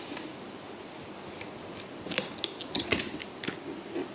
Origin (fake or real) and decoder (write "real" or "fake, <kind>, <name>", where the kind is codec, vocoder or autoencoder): real